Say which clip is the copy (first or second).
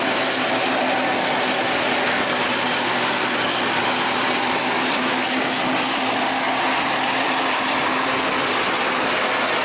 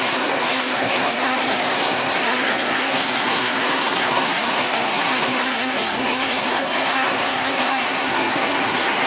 second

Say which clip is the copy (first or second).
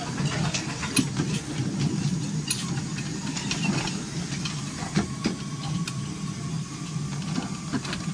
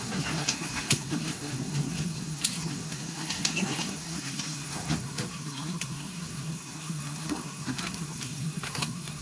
second